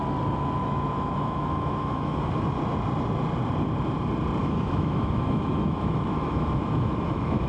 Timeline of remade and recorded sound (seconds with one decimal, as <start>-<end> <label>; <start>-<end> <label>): 0.0-0.6 recorded; 0.6-2.3 remade; 2.3-4.4 recorded; 4.4-7.5 remade